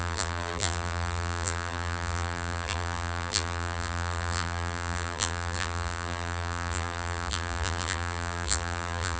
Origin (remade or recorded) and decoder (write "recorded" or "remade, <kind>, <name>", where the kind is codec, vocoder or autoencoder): remade, vocoder, BigVGAN v2